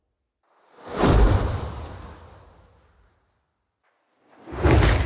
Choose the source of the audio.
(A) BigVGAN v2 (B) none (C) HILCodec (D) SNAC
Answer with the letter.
B